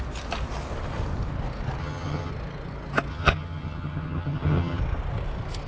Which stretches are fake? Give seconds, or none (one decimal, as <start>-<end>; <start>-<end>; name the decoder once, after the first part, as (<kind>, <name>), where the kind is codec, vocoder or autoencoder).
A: 1.8-2.3 (vocoder, HiFi-GAN); 3.1-4.8